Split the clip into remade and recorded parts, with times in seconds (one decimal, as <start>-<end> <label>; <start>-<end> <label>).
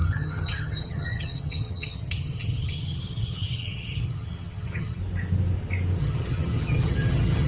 0.0-5.0 remade; 5.0-6.0 recorded; 6.0-7.5 remade